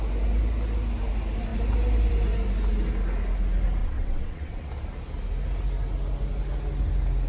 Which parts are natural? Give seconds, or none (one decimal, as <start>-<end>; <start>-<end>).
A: 0.0-3.8; 4.7-7.3

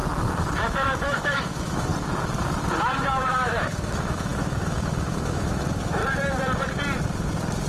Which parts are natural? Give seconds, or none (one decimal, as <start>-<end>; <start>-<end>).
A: 0.0-0.6; 1.9-2.8; 6.0-7.7

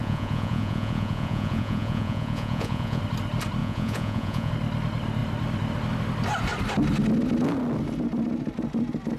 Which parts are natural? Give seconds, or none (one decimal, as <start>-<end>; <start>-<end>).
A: 3.0-3.6; 4.5-9.2

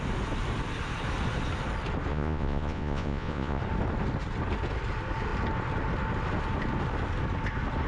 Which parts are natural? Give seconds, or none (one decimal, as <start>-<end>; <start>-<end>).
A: 0.0-2.1; 3.6-7.9

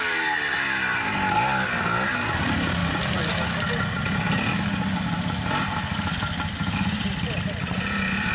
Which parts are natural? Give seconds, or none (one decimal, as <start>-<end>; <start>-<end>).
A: 0.0-8.3